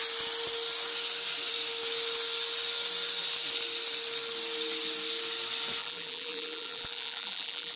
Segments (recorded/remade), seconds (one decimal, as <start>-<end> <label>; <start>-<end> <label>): 0.0-5.8 recorded; 5.8-7.8 remade